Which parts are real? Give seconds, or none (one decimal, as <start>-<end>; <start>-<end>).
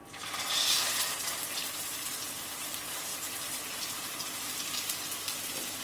1.1-1.6; 2.2-3.1; 4.7-5.8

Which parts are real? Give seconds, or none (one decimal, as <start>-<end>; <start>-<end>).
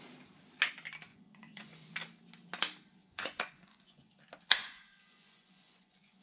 0.0-1.1; 1.9-3.0; 4.1-4.6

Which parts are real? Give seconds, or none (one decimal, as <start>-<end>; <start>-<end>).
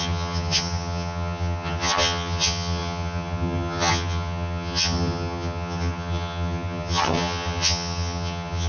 none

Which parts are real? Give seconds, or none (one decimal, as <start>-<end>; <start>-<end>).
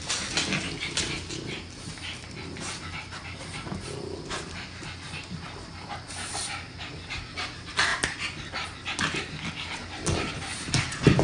0.0-11.2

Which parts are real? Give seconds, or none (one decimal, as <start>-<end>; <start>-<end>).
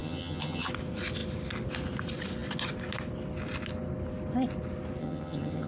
0.7-5.0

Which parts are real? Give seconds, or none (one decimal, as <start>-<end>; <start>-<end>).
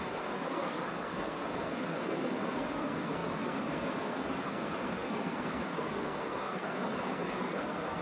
none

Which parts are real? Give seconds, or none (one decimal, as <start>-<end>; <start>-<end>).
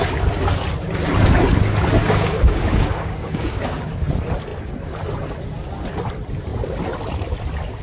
0.0-2.0; 3.9-7.8